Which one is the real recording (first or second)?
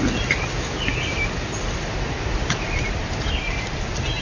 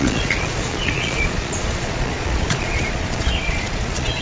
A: first